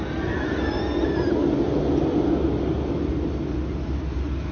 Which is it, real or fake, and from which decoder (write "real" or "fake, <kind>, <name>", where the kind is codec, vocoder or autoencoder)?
real